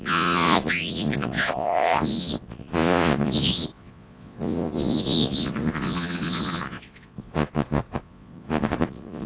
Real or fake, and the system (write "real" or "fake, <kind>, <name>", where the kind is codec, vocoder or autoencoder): fake, vocoder, Vocos